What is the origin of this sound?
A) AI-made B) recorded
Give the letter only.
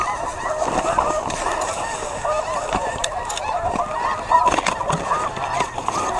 B